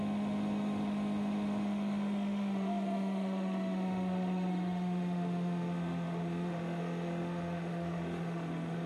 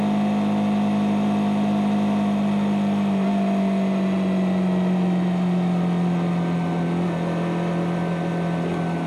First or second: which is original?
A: second